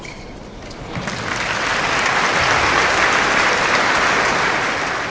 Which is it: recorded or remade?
recorded